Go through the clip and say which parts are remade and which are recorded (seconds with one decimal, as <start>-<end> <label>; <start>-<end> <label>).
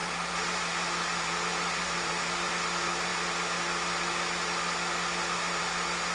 0.0-2.5 remade; 2.5-6.1 recorded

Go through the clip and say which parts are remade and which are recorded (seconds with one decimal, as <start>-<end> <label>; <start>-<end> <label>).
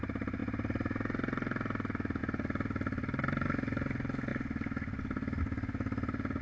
0.0-6.4 recorded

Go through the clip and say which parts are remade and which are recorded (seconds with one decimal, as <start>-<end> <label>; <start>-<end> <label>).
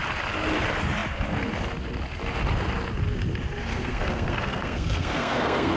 0.0-3.7 recorded; 3.7-5.8 remade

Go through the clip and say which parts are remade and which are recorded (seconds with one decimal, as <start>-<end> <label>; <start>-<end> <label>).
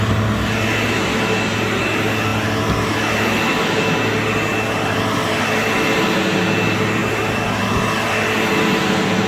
0.0-9.3 recorded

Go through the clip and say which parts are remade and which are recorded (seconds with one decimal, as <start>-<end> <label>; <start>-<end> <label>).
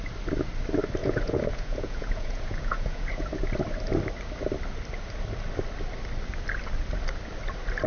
0.0-1.0 recorded; 1.0-3.3 remade; 3.3-7.9 recorded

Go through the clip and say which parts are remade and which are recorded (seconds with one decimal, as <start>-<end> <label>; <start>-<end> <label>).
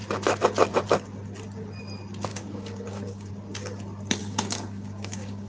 0.0-2.3 recorded; 2.3-3.3 remade; 3.3-4.2 recorded; 4.2-5.5 remade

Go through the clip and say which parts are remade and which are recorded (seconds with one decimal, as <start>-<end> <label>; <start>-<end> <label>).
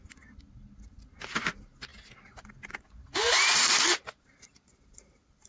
0.0-5.5 recorded